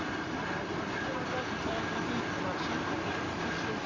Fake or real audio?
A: real